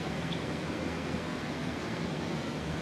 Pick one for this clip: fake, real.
fake